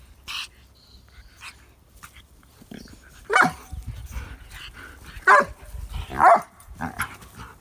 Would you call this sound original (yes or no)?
yes